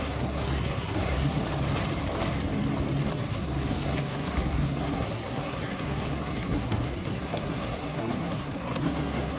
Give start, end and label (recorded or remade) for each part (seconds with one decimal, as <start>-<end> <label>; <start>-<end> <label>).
0.0-1.4 remade; 1.4-3.1 recorded; 3.1-9.4 remade